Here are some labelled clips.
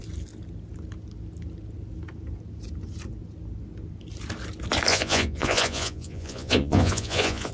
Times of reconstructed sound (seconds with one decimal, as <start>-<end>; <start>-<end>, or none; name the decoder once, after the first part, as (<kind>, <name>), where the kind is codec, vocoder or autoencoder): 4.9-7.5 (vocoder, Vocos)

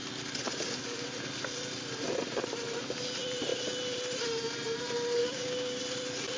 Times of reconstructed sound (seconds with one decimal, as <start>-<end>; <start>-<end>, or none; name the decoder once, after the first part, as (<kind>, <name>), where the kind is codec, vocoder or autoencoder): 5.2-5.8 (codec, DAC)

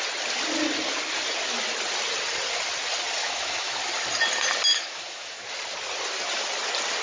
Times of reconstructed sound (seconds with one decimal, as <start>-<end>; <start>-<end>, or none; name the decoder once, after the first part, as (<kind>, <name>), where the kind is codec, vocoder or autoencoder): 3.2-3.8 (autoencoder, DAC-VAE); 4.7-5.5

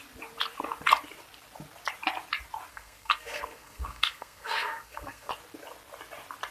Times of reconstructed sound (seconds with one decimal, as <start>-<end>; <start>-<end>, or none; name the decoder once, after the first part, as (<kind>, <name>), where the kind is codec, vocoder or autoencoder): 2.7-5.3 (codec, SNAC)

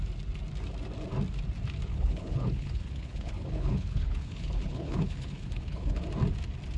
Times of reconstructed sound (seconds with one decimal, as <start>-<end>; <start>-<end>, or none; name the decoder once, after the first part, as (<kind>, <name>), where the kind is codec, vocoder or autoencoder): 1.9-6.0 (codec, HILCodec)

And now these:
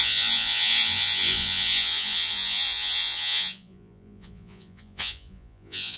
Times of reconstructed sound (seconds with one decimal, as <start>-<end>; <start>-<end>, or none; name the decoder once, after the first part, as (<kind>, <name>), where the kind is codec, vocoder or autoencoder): 0.0-6.0 (vocoder, Vocos)

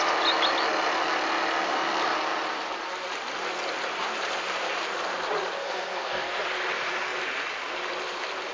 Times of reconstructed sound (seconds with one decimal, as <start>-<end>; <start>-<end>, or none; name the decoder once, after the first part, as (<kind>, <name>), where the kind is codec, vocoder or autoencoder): 5.6-6.4 (codec, SNAC)